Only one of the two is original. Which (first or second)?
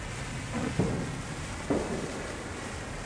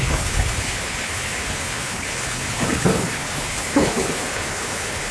first